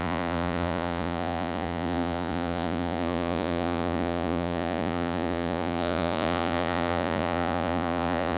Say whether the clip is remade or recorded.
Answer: remade